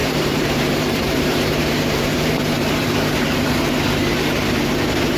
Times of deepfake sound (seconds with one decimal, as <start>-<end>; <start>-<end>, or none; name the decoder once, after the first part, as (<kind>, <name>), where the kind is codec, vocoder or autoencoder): 0.0-3.1 (vocoder, BigVGAN v2)